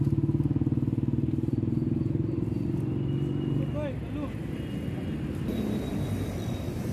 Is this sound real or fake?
real